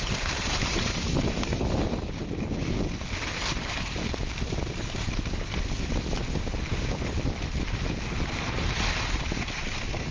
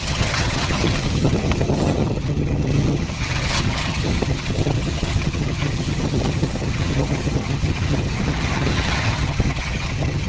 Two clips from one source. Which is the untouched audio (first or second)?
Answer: first